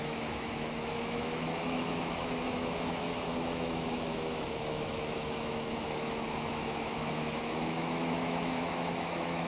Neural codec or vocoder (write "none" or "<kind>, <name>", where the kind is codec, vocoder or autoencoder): autoencoder, DAC-VAE